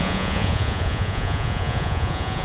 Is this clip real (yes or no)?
no